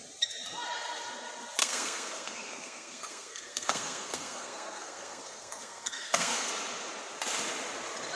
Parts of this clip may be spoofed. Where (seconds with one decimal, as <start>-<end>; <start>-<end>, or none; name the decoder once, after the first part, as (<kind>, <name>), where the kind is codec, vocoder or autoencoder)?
1.6-6.5 (codec, SNAC)